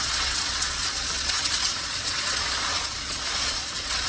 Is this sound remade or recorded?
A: remade